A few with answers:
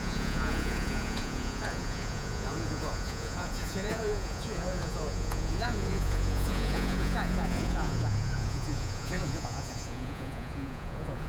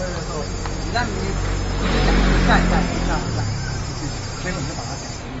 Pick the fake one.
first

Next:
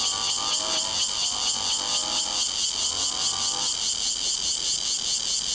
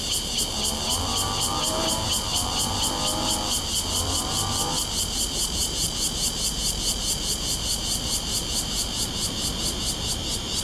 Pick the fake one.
second